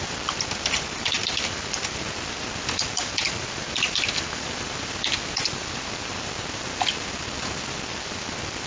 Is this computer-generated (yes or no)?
yes